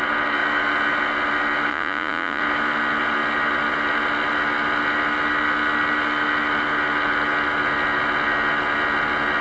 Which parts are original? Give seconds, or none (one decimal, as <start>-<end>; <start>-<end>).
0.0-1.7; 2.4-9.4